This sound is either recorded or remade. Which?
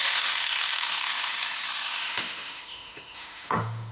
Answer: remade